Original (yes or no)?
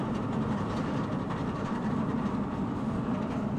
yes